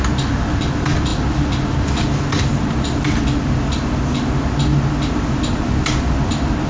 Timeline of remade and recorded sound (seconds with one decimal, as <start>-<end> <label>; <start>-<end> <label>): 0.0-6.7 recorded